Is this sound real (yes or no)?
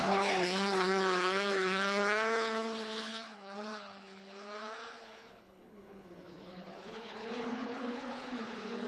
no